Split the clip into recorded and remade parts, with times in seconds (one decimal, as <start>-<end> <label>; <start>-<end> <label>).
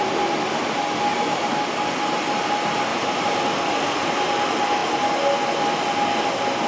0.0-1.1 recorded; 1.1-2.2 remade; 2.2-2.9 recorded; 2.9-3.4 remade; 3.4-6.7 recorded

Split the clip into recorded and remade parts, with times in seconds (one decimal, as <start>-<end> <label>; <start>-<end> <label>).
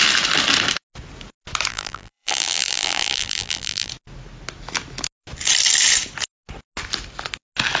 0.0-1.7 recorded; 1.7-3.9 remade; 3.9-7.8 recorded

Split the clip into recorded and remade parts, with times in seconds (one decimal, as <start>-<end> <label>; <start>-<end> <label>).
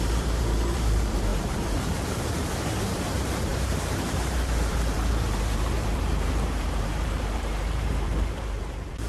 0.0-9.1 remade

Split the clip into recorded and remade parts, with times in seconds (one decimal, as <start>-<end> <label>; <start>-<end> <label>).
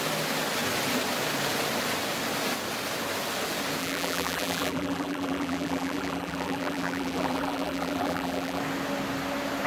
0.0-3.8 recorded; 3.8-8.6 remade; 8.6-9.7 recorded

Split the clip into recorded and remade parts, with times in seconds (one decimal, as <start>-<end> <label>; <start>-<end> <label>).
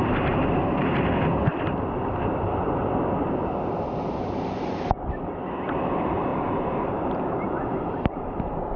0.0-0.9 remade; 0.9-6.3 recorded; 6.3-8.3 remade; 8.3-8.8 recorded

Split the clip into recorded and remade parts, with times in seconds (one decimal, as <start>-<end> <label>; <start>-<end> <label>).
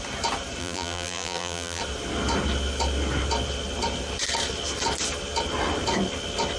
0.0-0.6 recorded; 0.6-1.8 remade; 1.8-6.6 recorded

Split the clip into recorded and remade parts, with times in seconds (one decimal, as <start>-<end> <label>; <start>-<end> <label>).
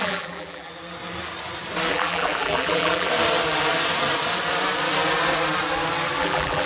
0.0-0.7 remade; 0.7-1.9 recorded; 1.9-3.1 remade; 3.1-6.2 recorded; 6.2-6.7 remade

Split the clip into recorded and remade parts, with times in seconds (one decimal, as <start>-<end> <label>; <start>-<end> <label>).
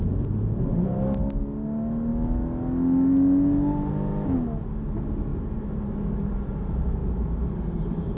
0.0-5.3 recorded; 5.3-5.9 remade; 5.9-7.0 recorded; 7.0-8.2 remade